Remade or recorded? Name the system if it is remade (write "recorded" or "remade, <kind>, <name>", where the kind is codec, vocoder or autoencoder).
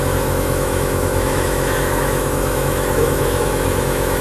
remade, autoencoder, DAC-VAE